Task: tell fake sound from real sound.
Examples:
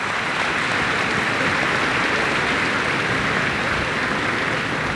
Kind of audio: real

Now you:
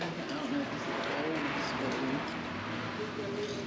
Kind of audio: real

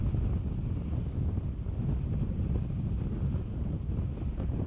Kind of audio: real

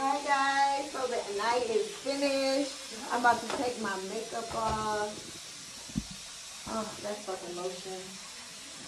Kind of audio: real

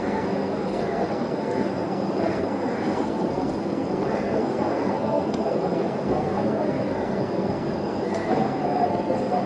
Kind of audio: fake